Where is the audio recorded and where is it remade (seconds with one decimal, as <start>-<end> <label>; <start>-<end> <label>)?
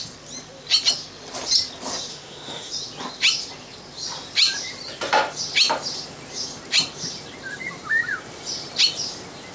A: 0.0-2.1 recorded; 2.1-2.7 remade; 2.7-9.5 recorded